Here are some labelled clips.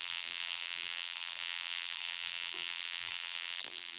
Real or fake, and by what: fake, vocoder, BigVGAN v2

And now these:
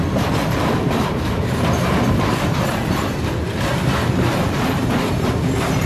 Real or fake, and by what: fake, vocoder, BigVGAN v2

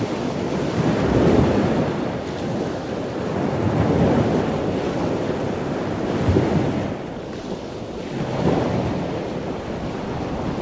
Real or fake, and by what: real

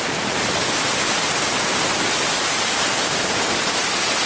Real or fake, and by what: fake, vocoder, BigVGAN v2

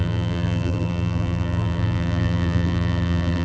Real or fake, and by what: fake, vocoder, BigVGAN v2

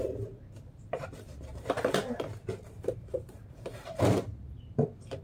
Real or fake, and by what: fake, vocoder, BigVGAN v2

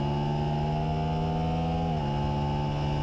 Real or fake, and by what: real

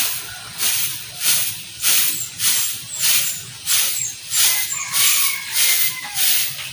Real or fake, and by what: fake, vocoder, BigVGAN v2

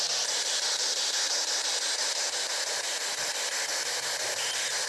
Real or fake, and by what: real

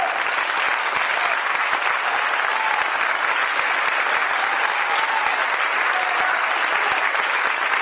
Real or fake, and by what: real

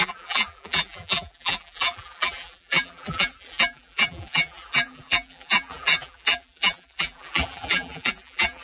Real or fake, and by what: fake, vocoder, BigVGAN v2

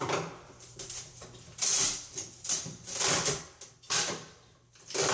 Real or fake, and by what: fake, vocoder, BigVGAN v2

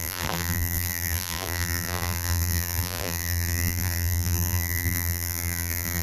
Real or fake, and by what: fake, vocoder, BigVGAN v2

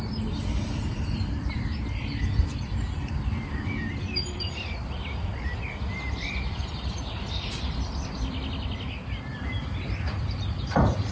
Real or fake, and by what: fake, vocoder, BigVGAN v2